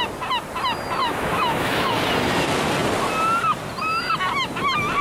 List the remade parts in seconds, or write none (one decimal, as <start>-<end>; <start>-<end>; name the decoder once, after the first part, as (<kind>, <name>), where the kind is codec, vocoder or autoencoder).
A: 1.0-1.9 (autoencoder, DAC-VAE)